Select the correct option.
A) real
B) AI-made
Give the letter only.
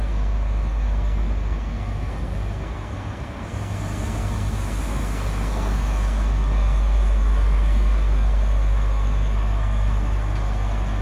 B